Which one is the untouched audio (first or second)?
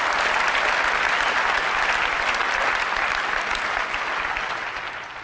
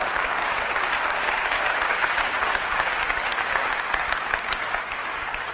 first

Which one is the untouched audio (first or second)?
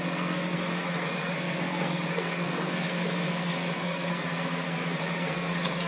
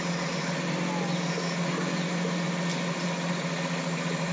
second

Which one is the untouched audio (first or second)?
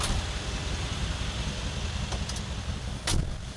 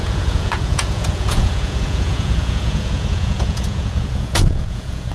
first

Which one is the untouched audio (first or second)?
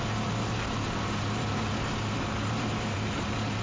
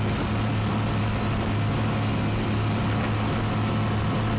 second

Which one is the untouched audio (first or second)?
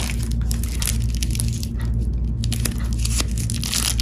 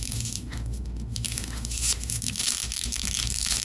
first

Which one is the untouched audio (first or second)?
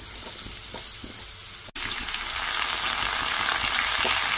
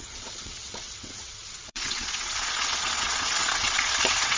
first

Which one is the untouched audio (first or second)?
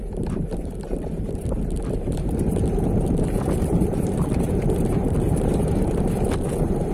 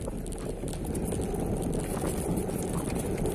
second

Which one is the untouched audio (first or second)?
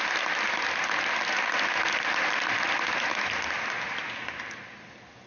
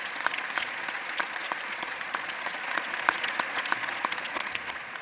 first